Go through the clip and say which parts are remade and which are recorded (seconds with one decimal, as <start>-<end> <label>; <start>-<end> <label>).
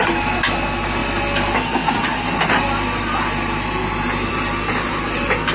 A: 0.0-5.5 recorded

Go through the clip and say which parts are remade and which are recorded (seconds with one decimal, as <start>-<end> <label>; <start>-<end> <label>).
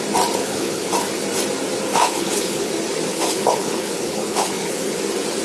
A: 0.0-0.4 recorded; 0.4-0.9 remade; 0.9-1.9 recorded; 1.9-2.7 remade; 2.7-3.1 recorded; 3.1-5.0 remade; 5.0-5.4 recorded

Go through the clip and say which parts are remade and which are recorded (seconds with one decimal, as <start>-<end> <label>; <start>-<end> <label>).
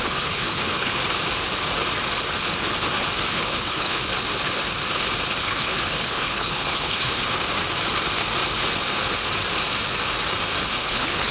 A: 0.0-1.0 remade; 1.0-3.3 recorded; 3.3-4.0 remade; 4.0-5.4 recorded; 5.4-7.2 remade; 7.2-10.8 recorded; 10.8-11.3 remade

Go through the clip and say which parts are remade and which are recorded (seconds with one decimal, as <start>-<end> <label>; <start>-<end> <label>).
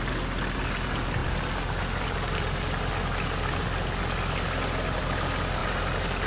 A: 0.0-6.3 recorded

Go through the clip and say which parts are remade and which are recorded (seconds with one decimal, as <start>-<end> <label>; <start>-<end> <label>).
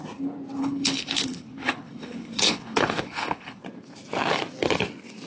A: 0.0-0.6 recorded; 0.6-3.6 remade; 3.6-5.3 recorded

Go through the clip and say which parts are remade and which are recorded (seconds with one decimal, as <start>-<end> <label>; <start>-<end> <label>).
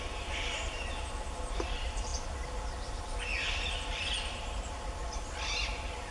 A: 0.0-6.1 recorded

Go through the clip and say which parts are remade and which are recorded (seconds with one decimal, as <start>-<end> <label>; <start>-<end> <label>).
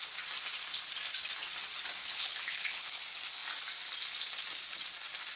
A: 0.0-2.0 recorded; 2.0-3.0 remade; 3.0-5.4 recorded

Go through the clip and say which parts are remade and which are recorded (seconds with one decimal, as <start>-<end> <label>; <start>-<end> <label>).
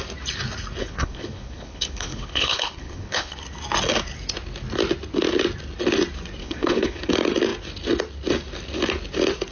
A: 0.0-0.8 recorded; 0.8-3.4 remade; 3.4-6.4 recorded; 6.4-7.1 remade; 7.1-9.5 recorded